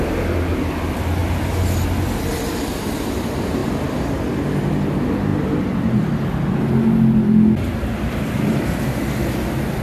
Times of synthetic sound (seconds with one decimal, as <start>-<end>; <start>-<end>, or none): none